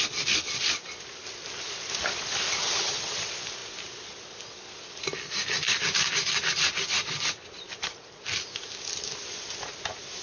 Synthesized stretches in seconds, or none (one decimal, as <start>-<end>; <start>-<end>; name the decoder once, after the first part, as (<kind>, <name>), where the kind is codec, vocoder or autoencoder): 2.6-3.2 (vocoder, HiFi-GAN)